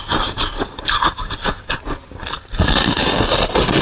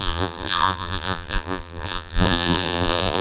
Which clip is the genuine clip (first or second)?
first